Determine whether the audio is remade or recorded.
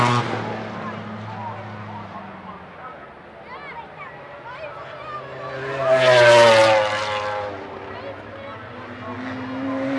recorded